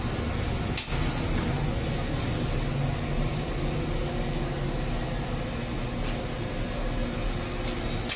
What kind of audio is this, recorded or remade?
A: recorded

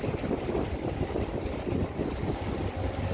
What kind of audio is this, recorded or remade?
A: recorded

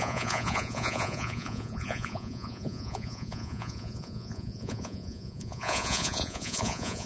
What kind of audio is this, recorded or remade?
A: remade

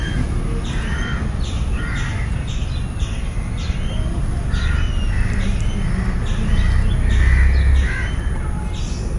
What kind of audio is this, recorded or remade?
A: recorded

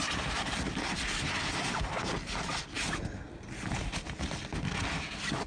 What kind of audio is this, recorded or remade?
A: recorded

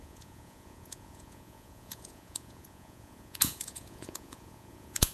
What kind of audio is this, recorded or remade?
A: remade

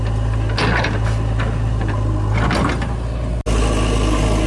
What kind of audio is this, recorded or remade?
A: recorded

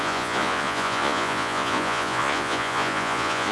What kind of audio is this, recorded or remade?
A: remade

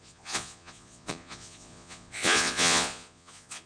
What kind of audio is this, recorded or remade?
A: remade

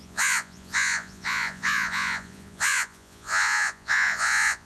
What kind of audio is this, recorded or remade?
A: remade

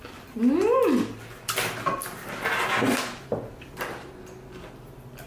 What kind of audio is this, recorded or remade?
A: recorded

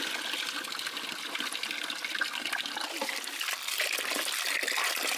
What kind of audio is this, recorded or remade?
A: recorded